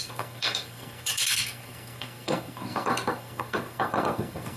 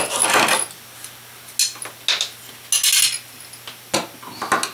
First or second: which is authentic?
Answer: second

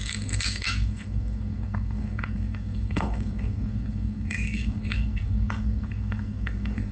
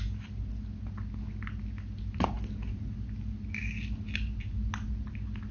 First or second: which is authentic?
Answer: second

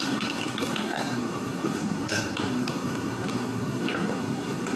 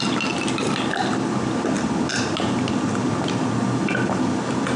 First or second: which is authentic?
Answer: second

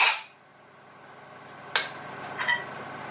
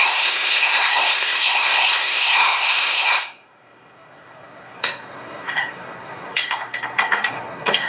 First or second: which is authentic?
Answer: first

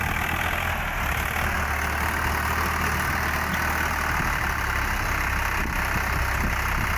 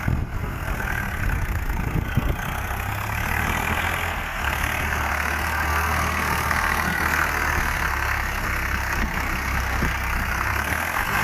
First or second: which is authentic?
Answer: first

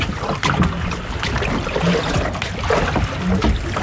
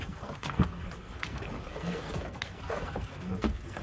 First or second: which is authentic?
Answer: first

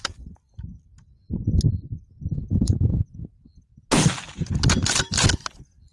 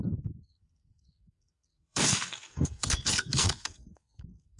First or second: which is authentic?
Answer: first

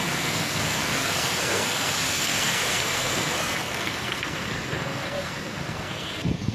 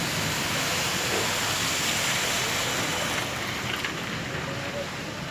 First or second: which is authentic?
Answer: second